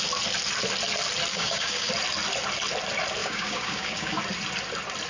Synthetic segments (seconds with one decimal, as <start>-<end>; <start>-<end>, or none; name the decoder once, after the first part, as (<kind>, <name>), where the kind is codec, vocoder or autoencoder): 1.3-1.9 (codec, DAC); 3.2-4.2